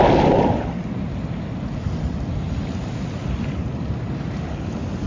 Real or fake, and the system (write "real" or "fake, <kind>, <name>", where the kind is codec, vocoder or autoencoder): real